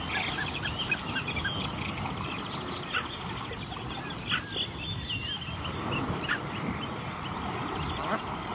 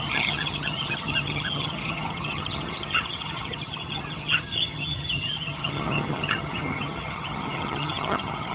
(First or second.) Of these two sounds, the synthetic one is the second